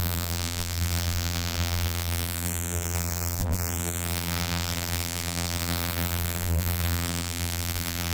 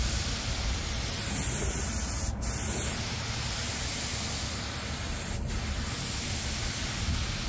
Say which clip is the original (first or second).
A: second